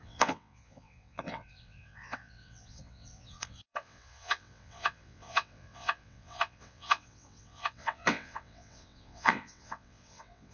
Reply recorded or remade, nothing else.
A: remade